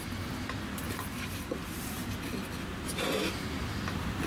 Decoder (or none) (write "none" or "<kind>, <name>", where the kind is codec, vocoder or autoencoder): none